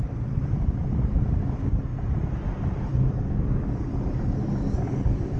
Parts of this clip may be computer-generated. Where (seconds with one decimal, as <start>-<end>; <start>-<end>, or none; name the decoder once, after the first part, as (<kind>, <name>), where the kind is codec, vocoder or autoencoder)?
none